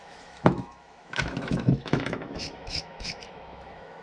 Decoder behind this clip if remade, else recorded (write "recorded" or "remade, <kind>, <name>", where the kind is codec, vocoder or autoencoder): remade, autoencoder, DAC-VAE